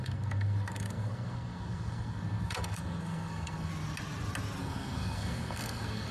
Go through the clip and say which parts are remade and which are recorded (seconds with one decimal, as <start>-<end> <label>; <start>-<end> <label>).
0.0-3.7 remade; 3.7-4.6 recorded; 4.6-6.1 remade